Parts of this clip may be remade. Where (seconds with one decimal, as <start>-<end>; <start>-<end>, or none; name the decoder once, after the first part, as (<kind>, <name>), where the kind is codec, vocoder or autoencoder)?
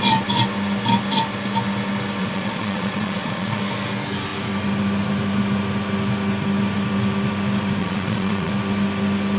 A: 2.2-3.6 (vocoder, Vocos); 7.8-8.5